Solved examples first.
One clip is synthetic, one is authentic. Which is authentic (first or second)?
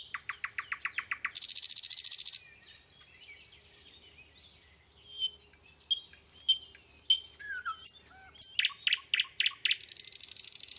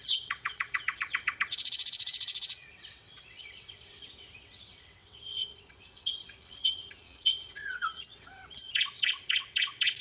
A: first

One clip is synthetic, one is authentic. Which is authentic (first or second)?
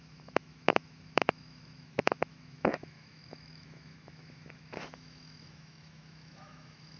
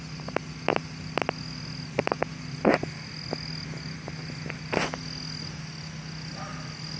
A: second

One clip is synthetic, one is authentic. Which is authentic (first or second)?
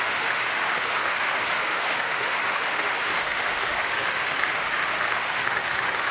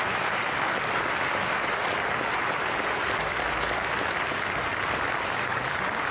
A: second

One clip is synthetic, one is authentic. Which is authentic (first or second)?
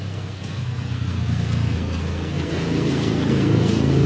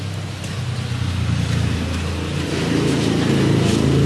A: second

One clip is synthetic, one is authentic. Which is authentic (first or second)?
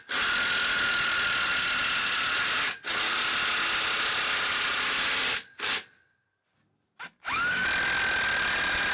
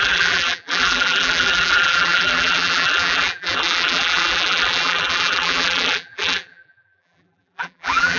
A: first